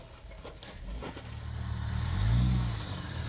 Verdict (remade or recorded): recorded